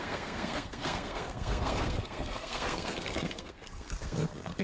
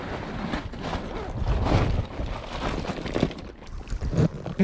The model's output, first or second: first